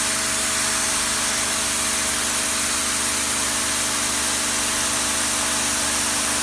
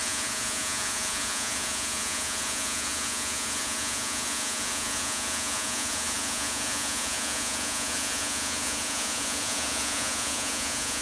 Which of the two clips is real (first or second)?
first